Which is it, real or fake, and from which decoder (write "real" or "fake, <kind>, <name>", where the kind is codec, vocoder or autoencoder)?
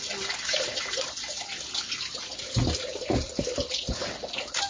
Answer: real